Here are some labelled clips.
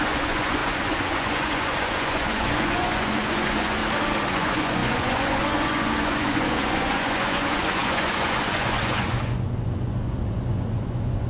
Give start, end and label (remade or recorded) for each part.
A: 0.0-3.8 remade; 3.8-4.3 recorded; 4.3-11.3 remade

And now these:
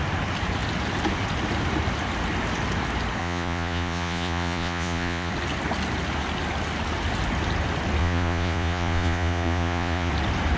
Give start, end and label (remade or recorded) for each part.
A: 0.0-3.2 recorded; 3.2-5.3 remade; 5.3-8.0 recorded; 8.0-10.1 remade; 10.1-10.6 recorded

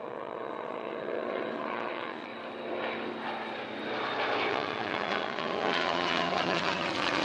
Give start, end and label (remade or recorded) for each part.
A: 0.0-2.3 remade; 2.3-4.5 recorded; 4.5-7.2 remade

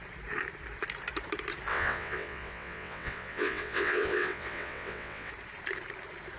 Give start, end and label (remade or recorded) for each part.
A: 0.0-1.7 recorded; 1.7-5.3 remade; 5.3-6.4 recorded